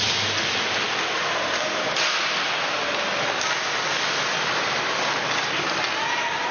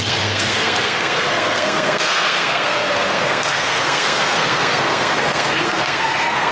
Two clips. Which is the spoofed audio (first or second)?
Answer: second